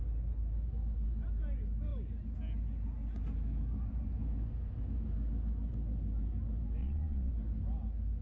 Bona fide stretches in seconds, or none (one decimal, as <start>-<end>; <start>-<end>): 0.0-6.8; 7.3-8.2